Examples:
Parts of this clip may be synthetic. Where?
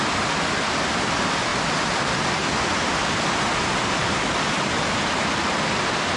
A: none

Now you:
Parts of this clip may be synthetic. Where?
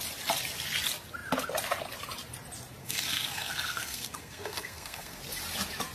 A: 2.8-5.2 (codec, SNAC)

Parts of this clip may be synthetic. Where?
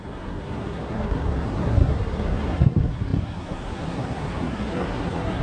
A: 0.0-5.4 (codec, SNAC)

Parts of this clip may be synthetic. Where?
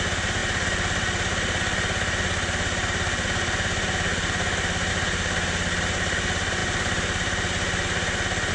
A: none